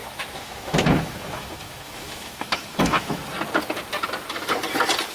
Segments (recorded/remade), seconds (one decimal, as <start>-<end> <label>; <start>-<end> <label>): 0.0-3.2 remade; 3.2-5.1 recorded